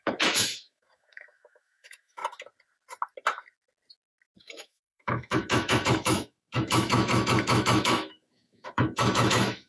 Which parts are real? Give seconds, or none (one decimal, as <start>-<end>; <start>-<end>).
2.2-4.4